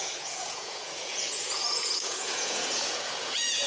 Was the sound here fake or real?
fake